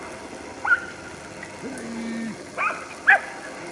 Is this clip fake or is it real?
real